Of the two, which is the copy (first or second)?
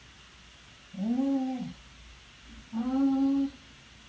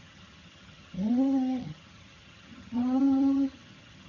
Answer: second